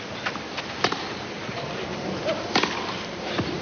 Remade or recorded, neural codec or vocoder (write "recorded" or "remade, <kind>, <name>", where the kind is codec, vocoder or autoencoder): recorded